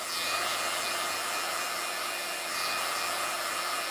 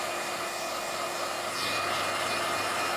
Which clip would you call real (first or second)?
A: second